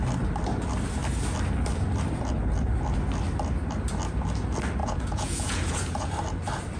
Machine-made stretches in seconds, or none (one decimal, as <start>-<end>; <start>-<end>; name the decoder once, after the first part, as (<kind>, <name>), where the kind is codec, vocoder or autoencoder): 4.8-6.1 (vocoder, Vocos)